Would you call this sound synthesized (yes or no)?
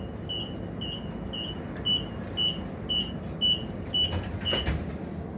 no